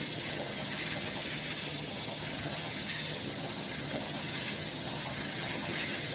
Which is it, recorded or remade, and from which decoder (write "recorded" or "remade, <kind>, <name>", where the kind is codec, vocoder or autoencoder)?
remade, vocoder, HiFi-GAN